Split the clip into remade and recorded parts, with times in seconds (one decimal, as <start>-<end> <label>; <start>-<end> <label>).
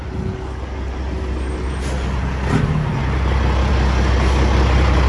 0.0-5.1 recorded